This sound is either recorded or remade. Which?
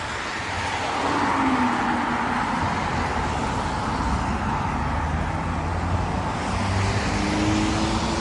recorded